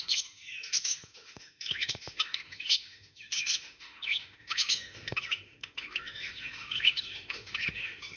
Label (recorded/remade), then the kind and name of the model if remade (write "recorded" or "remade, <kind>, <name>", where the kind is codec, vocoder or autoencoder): remade, autoencoder, DAC-VAE